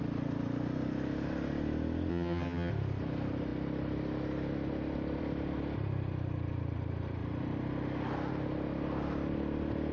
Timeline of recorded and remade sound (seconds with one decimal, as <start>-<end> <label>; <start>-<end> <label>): 0.0-2.1 recorded; 2.1-2.7 remade; 2.7-9.9 recorded